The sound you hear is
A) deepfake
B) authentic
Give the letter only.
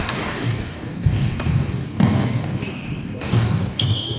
A